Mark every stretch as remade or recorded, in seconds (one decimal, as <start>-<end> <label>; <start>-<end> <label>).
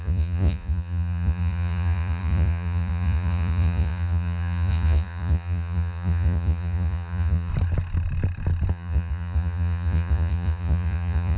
0.0-7.5 remade; 7.5-8.7 recorded; 8.7-11.4 remade